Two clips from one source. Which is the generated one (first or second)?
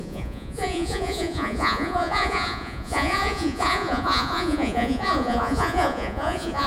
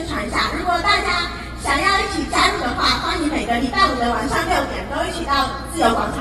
first